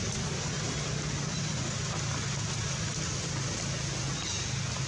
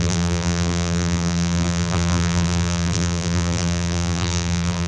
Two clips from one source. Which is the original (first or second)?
first